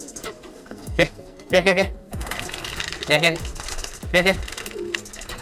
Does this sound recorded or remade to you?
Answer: remade